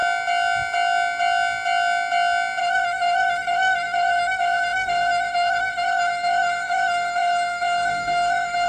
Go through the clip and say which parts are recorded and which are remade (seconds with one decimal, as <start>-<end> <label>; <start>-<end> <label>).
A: 0.0-2.6 recorded; 2.6-8.7 remade